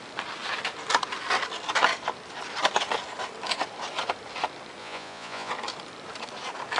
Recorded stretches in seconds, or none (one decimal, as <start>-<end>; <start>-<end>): 0.0-4.8; 5.5-6.8

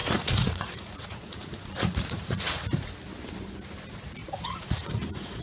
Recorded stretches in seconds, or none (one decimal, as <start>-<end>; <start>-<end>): 2.9-4.2